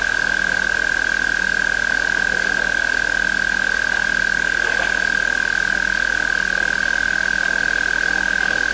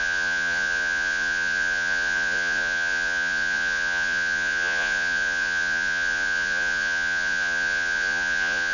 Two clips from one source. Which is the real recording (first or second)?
first